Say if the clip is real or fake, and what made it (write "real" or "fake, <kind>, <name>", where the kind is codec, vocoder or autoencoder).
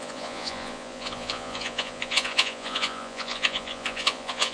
fake, vocoder, Vocos